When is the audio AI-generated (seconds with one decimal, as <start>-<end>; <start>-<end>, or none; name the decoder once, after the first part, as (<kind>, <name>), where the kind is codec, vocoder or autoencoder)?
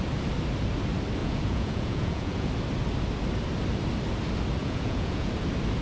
1.2-2.5 (vocoder, Vocos); 4.6-5.3